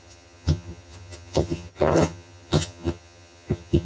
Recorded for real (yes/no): no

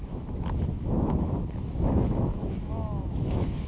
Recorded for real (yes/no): no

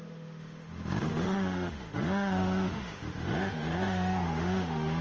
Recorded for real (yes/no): no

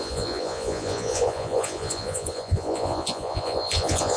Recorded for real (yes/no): no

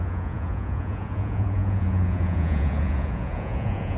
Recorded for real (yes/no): no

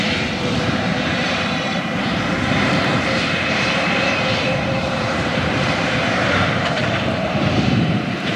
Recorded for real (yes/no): no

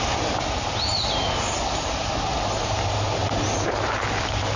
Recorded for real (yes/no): yes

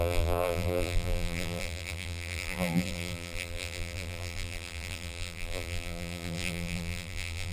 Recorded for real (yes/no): no